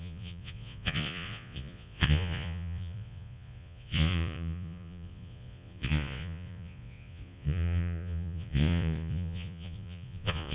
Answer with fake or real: fake